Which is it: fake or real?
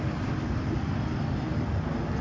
real